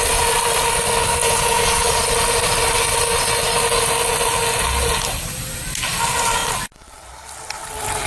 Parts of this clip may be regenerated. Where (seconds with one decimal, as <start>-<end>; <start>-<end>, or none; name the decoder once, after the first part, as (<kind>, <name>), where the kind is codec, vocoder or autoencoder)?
1.2-1.9 (vocoder, Vocos)